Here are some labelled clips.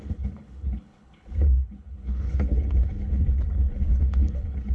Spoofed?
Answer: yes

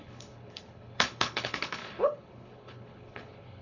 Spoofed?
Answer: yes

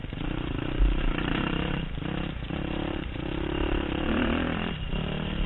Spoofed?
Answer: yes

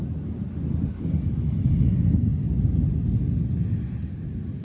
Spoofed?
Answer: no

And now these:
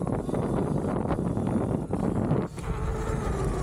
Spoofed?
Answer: no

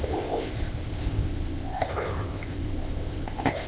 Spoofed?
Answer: yes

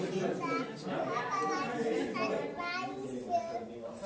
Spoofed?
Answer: no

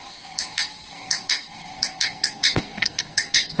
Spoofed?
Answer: yes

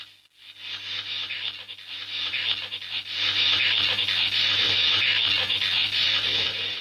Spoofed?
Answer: no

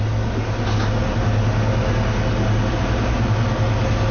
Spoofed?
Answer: no